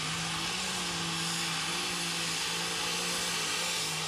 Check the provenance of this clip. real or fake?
real